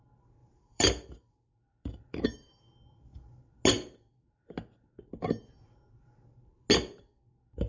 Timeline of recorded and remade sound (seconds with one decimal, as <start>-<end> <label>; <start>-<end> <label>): 0.0-0.4 recorded; 0.4-3.4 remade; 3.4-7.7 recorded